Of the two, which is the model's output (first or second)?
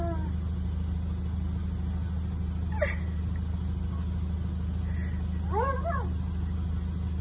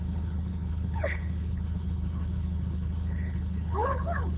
second